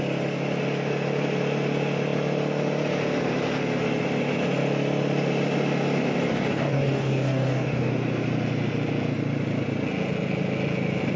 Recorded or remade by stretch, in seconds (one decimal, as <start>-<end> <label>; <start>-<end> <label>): 0.0-6.3 recorded; 6.3-7.9 remade; 7.9-11.2 recorded